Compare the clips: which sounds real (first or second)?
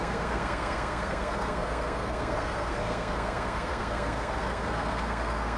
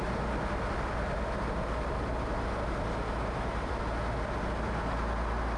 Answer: second